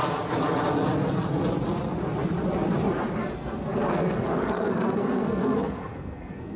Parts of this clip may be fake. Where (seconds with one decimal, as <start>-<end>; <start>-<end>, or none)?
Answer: 3.2-6.6